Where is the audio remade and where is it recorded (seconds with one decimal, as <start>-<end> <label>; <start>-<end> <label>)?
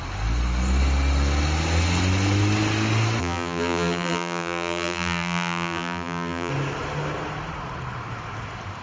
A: 0.0-3.2 recorded; 3.2-6.5 remade; 6.5-8.8 recorded